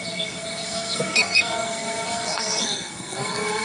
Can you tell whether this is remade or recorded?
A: remade